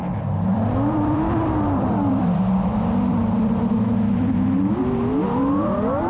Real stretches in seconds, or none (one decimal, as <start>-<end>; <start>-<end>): 3.7-6.1